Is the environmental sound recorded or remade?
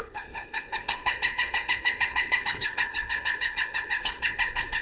remade